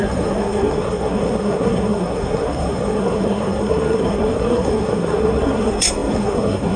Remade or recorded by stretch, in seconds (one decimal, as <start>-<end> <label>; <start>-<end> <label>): 0.0-6.8 remade